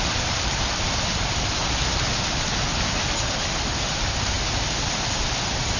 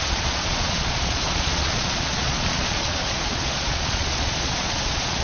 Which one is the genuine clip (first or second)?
first